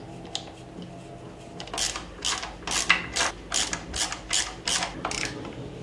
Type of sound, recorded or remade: recorded